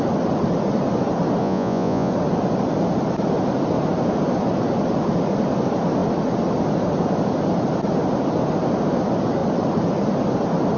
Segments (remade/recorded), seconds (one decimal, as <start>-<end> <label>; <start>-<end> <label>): 0.0-1.4 recorded; 1.4-2.1 remade; 2.1-10.8 recorded